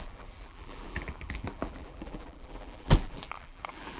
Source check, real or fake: fake